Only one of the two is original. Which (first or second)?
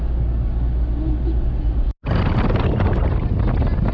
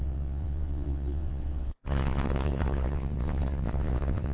first